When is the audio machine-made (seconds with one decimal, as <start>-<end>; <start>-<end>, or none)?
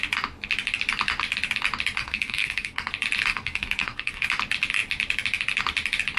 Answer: 2.0-2.9; 3.3-4.3